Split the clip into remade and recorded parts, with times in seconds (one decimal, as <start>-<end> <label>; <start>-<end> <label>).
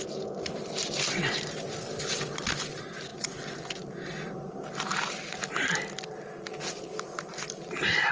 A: 0.0-1.2 recorded; 1.2-1.8 remade; 1.8-3.1 recorded; 3.1-8.1 remade